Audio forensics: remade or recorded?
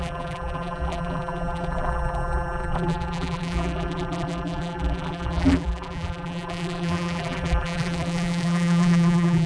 remade